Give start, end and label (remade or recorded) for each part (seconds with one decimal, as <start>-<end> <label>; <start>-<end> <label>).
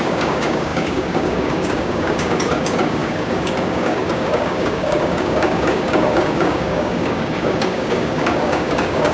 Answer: 0.0-9.1 remade